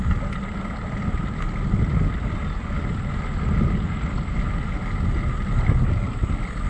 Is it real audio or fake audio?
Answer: real